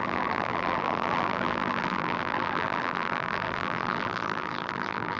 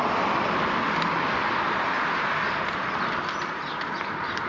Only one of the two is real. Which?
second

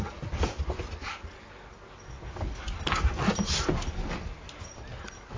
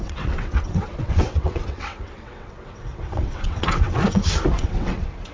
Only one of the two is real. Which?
first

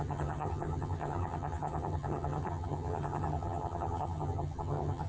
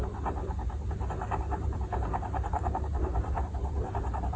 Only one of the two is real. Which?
second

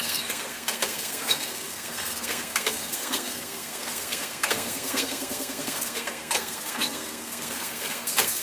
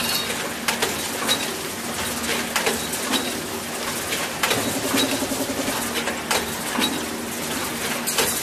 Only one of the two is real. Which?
second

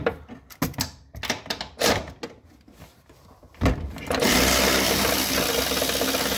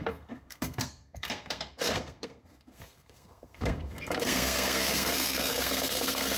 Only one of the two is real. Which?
first